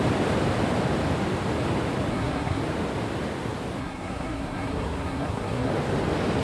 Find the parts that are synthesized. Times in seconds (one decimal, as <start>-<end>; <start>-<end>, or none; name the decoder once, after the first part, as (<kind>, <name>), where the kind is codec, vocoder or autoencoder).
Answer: 2.1-2.6 (codec, SNAC); 3.8-5.7